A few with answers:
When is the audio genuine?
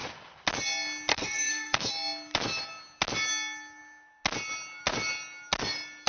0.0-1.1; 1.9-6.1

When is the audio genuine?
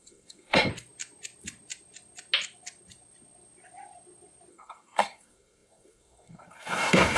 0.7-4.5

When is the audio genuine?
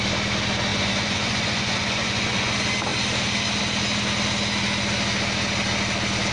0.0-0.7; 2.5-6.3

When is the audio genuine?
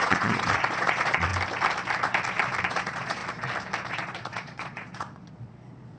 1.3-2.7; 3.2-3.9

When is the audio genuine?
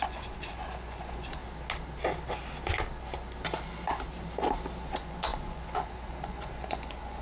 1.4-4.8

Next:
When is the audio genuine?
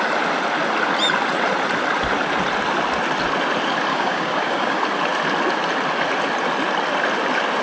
0.0-3.9; 4.8-7.6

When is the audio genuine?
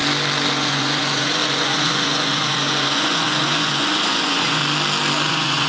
0.0-0.5; 4.6-5.3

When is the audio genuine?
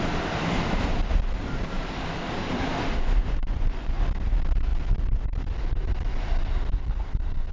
0.0-3.2; 4.0-7.5